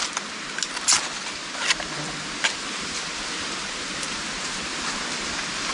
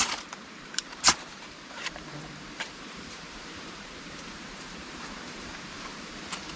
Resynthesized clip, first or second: second